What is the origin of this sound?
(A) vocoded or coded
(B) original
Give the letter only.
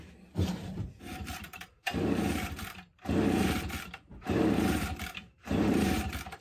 A